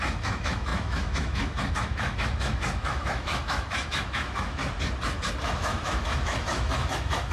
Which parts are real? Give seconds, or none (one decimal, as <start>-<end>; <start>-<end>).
4.6-5.4